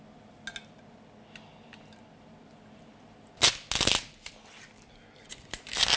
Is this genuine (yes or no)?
yes